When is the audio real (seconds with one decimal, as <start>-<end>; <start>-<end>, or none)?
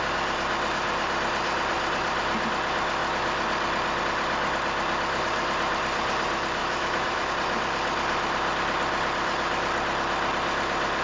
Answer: 0.0-6.6; 7.3-11.0